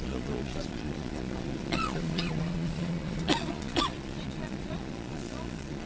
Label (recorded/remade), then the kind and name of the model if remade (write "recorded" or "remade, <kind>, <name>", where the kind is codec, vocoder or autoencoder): remade, vocoder, Vocos